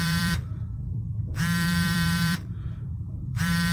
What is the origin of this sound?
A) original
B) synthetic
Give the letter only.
B